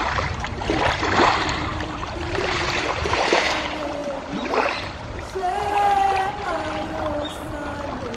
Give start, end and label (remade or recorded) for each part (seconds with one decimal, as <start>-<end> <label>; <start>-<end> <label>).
0.0-7.3 remade; 7.3-8.2 recorded